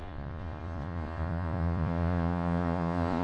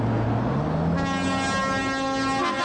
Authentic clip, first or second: second